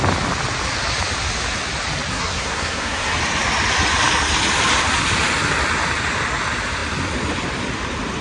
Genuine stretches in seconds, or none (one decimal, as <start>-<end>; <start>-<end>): 0.0-2.1; 3.1-8.2